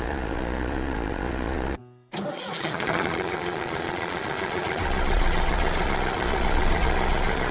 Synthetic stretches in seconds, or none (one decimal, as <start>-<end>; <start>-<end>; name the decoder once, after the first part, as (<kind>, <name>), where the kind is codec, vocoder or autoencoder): 0.0-1.8 (vocoder, Vocos); 2.3-7.5